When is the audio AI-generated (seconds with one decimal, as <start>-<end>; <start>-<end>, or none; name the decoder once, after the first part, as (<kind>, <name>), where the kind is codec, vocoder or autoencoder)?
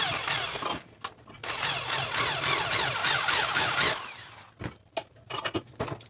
3.0-3.7 (codec, DAC)